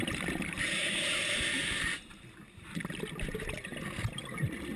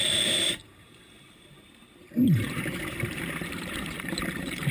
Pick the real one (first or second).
first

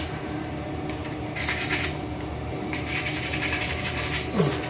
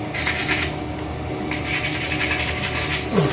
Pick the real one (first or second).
second